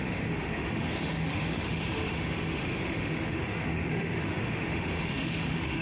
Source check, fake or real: fake